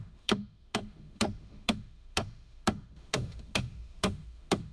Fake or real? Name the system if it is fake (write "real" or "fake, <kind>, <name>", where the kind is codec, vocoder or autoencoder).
fake, autoencoder, DAC-VAE